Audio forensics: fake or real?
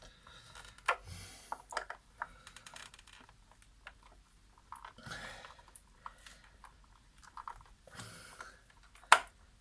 real